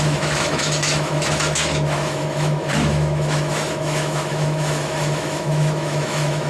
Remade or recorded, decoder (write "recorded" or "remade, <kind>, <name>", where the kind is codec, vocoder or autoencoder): remade, autoencoder, DAC-VAE